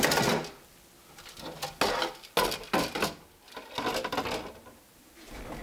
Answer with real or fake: real